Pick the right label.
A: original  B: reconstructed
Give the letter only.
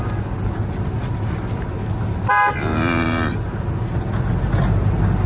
A